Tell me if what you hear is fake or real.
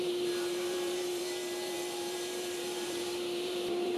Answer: fake